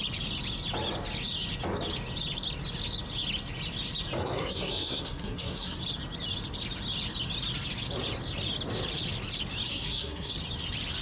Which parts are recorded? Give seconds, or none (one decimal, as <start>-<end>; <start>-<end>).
0.0-4.2; 5.8-9.7; 10.3-11.0